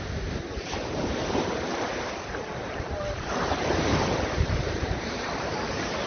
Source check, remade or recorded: remade